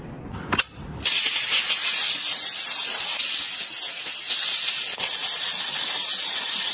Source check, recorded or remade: recorded